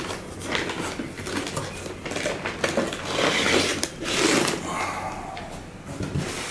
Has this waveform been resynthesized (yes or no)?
no